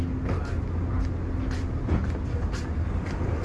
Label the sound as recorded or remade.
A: recorded